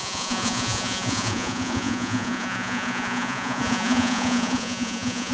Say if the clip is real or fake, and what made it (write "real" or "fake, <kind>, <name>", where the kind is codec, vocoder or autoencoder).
fake, vocoder, Vocos